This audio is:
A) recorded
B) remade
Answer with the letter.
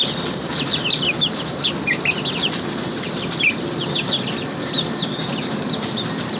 B